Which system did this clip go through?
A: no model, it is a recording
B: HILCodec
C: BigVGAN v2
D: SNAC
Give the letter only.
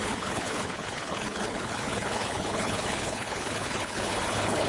B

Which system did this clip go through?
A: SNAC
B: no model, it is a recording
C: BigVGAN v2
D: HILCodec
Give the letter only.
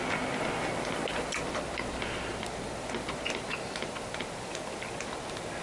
B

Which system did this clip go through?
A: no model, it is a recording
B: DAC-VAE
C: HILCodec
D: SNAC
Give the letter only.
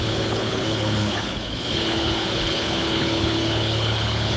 C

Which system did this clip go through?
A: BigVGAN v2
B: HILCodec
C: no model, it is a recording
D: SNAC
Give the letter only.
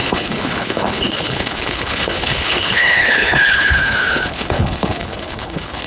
B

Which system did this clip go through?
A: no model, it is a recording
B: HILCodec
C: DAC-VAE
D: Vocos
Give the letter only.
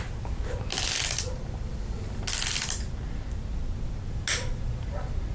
A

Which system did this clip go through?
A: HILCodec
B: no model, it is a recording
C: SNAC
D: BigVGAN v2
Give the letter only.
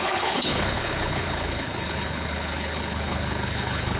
A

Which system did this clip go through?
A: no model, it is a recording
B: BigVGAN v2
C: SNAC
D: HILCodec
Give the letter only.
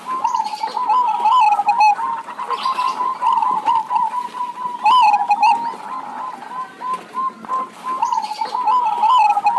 A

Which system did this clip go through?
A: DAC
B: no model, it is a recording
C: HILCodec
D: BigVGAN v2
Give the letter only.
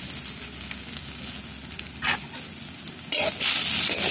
B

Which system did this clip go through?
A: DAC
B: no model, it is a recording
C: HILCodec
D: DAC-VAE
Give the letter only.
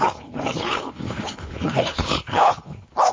C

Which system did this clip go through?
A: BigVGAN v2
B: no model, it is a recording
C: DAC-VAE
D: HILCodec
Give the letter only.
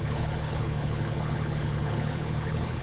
D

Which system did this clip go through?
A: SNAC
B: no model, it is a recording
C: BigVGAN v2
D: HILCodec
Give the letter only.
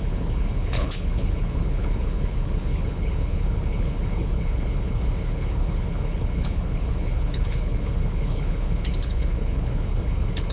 D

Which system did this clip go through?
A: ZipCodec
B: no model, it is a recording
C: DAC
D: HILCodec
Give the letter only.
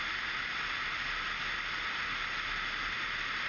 B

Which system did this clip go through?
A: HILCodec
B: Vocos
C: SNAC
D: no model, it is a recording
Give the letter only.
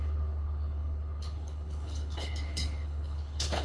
A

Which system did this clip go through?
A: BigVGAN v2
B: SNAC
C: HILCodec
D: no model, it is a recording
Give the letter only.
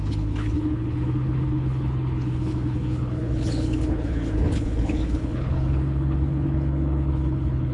C